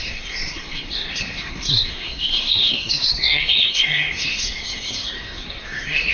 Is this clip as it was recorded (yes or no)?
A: no